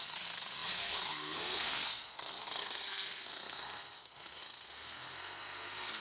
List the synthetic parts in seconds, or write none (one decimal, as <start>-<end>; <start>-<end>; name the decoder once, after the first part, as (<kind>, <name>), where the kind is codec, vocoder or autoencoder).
0.0-6.0 (codec, SNAC)